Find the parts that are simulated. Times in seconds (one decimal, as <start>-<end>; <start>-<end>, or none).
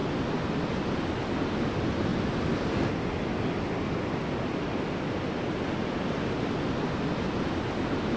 none